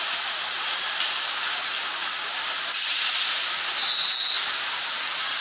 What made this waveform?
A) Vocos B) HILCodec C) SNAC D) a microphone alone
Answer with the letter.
D